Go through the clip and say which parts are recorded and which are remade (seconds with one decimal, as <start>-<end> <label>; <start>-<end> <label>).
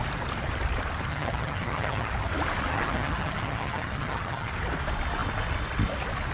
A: 0.0-1.1 recorded; 1.1-2.1 remade; 2.1-2.7 recorded; 2.7-4.5 remade; 4.5-6.3 recorded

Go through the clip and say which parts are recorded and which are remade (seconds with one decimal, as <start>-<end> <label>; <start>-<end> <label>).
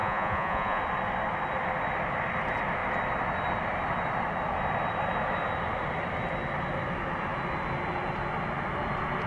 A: 0.0-0.8 remade; 0.8-9.3 recorded